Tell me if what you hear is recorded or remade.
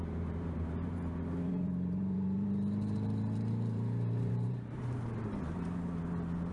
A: remade